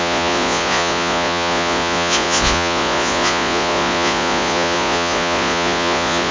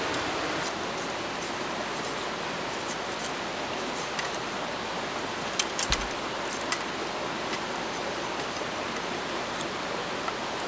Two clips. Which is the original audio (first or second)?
second